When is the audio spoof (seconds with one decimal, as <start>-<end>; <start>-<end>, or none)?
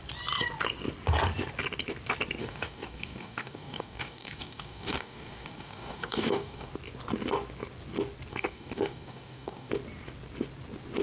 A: 2.4-6.7; 8.3-9.7